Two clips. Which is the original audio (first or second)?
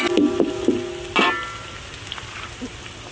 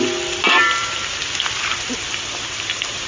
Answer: first